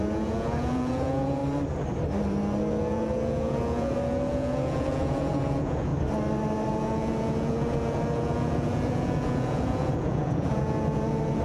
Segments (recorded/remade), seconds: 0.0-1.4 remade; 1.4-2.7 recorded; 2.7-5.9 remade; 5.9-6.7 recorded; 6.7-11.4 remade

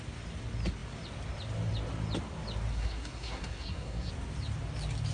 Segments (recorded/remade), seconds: 0.0-2.7 recorded; 2.7-4.1 remade; 4.1-5.1 recorded

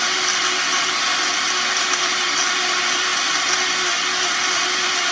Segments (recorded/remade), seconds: 0.0-5.1 recorded

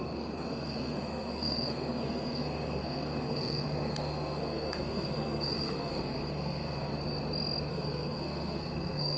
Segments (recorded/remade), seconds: 0.0-6.9 remade; 6.9-7.7 recorded; 7.7-9.2 remade

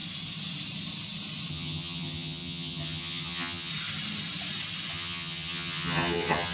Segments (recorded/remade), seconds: 0.0-1.5 recorded; 1.5-3.7 remade; 3.7-4.9 recorded; 4.9-6.5 remade

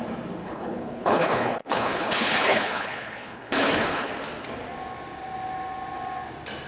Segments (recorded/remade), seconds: 0.0-0.4 recorded; 0.4-4.1 remade; 4.1-6.7 recorded